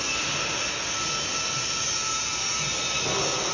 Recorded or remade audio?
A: recorded